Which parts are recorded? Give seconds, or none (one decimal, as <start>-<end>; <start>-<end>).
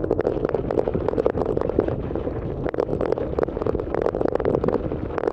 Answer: 0.0-0.9; 2.5-5.3